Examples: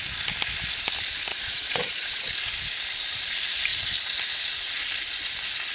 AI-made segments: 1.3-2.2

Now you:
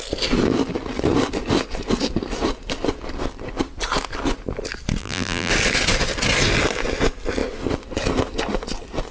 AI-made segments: 5.0-5.5

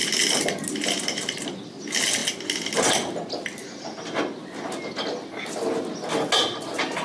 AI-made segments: none

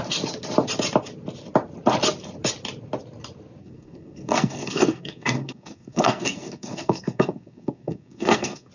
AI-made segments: 3.6-8.7

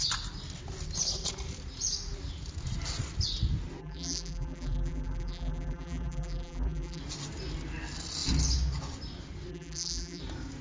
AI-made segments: 3.8-7.0; 9.5-10.2

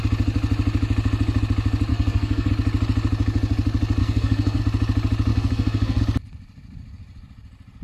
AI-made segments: 1.9-2.5; 4.0-4.6; 5.3-6.0